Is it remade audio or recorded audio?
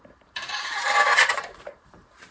remade